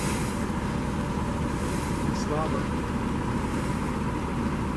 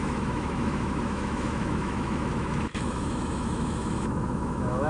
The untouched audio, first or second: first